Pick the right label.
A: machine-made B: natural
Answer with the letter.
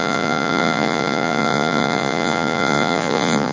A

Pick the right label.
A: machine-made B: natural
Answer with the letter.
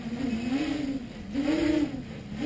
B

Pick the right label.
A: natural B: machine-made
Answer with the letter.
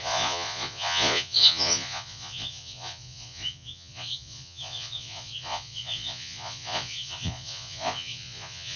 B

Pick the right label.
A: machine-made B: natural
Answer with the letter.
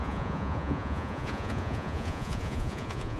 A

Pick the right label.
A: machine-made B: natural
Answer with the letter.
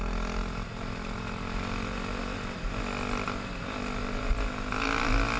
B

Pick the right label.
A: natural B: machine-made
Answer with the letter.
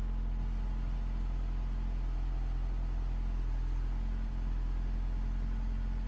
A